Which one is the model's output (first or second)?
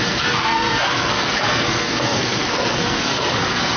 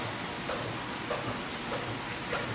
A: first